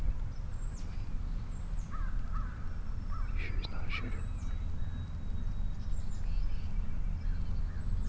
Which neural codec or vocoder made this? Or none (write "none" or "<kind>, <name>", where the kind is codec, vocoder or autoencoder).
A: none